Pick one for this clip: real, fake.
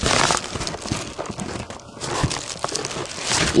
real